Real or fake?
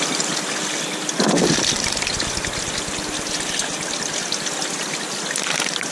real